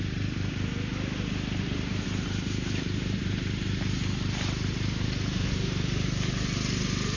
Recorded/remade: remade